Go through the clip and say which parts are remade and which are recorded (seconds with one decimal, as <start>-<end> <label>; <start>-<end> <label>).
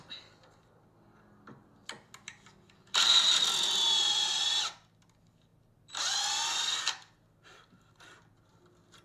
0.0-9.0 recorded